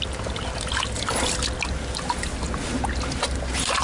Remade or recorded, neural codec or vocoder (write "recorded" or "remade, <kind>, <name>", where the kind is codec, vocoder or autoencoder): recorded